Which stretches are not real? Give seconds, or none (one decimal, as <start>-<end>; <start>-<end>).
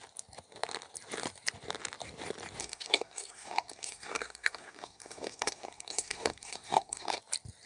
2.6-7.2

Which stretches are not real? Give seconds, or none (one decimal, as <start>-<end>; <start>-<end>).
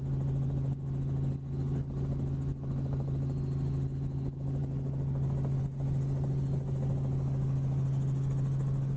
none